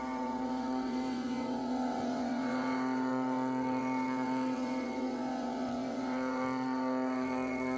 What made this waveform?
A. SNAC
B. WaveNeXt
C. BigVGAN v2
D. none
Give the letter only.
B